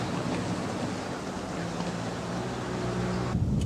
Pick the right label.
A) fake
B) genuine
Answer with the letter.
B